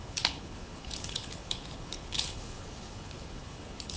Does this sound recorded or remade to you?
remade